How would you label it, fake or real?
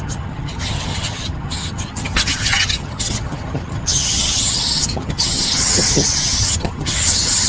fake